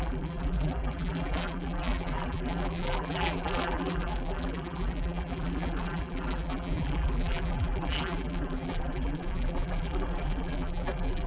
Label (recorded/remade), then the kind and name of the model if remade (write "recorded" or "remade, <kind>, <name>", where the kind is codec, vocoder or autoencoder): remade, vocoder, BigVGAN v2